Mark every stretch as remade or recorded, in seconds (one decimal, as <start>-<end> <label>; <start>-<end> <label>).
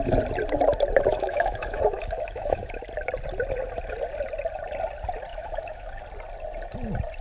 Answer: 0.0-1.1 recorded; 1.1-2.8 remade; 2.8-5.3 recorded; 5.3-5.9 remade; 5.9-7.2 recorded